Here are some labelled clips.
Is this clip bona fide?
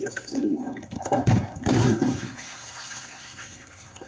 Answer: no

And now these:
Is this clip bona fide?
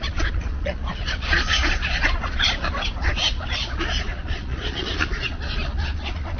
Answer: no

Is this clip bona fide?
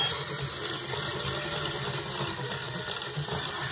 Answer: yes